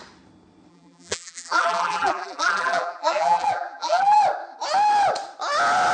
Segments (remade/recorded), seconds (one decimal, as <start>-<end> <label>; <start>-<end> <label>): 0.0-0.7 recorded; 0.7-4.2 remade; 4.2-5.9 recorded